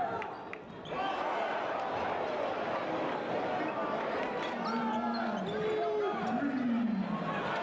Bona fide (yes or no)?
yes